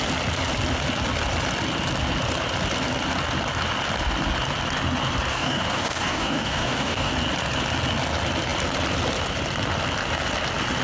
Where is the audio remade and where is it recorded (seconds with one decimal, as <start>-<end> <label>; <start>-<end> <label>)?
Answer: 0.0-5.3 recorded; 5.3-7.1 remade; 7.1-10.8 recorded